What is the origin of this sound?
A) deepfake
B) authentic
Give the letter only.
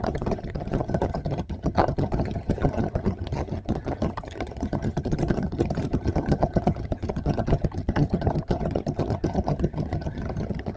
A